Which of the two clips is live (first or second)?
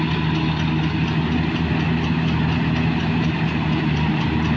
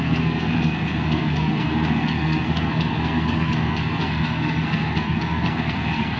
first